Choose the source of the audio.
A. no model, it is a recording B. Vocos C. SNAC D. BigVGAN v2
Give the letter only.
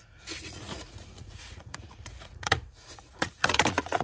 B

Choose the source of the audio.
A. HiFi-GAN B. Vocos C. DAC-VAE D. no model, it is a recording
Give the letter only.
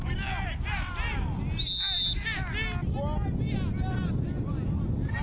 D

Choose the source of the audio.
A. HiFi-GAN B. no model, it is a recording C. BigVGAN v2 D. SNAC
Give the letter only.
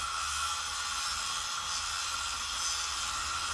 B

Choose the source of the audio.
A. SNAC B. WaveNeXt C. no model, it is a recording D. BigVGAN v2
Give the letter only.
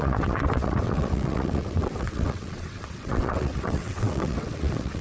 B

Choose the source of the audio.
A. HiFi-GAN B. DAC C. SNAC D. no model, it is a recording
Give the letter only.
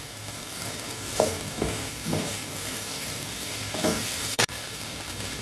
B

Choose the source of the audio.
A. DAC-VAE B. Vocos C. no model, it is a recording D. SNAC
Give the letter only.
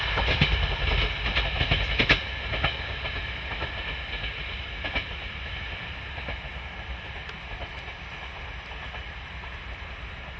C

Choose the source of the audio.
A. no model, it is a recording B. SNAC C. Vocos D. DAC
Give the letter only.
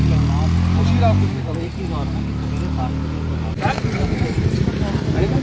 A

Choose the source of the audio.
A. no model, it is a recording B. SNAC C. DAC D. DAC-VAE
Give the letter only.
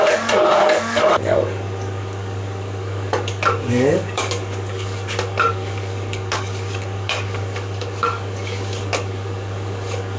C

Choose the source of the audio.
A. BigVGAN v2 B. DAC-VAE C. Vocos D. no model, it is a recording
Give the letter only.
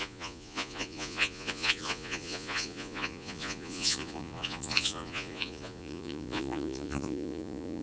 C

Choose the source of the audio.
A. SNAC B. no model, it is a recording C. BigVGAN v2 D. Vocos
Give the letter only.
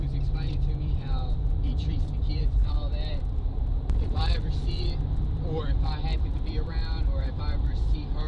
C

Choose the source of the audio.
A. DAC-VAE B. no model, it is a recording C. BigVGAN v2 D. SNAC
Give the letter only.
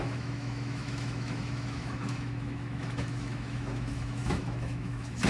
A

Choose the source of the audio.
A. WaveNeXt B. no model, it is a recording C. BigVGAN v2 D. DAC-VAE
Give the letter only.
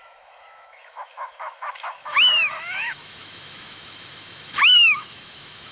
D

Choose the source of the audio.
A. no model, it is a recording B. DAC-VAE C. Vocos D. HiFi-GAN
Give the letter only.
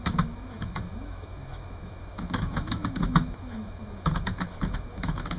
B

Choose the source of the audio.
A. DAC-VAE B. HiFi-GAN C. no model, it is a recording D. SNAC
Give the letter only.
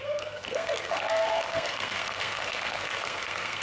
D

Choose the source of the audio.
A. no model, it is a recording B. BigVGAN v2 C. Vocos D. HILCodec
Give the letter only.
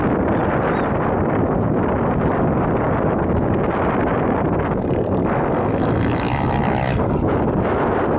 A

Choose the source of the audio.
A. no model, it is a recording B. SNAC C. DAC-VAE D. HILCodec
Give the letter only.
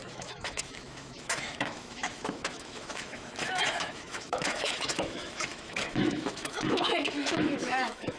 C